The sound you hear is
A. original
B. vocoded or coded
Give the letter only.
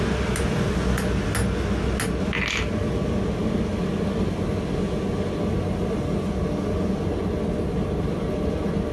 A